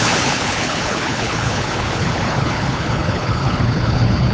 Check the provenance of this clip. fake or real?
fake